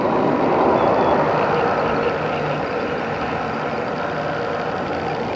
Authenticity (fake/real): real